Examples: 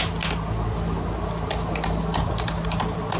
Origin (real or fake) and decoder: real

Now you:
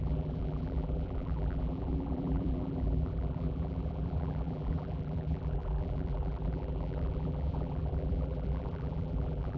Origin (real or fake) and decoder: fake, vocoder, BigVGAN v2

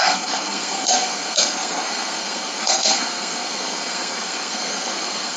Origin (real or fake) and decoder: fake, codec, SNAC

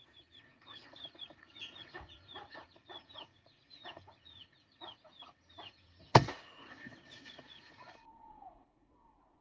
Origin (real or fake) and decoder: fake, vocoder, Vocos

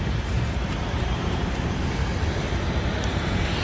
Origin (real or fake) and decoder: fake, vocoder, BigVGAN v2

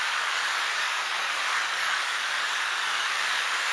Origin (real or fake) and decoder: fake, codec, DAC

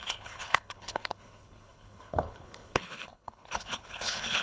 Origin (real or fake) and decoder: fake, codec, HILCodec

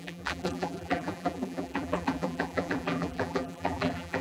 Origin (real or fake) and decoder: fake, vocoder, BigVGAN v2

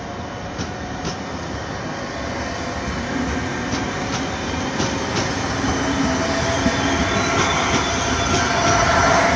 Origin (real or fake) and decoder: real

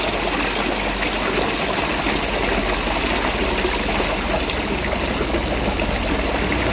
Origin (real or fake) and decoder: real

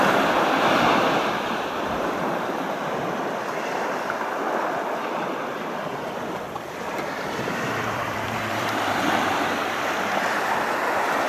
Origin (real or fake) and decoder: fake, vocoder, BigVGAN v2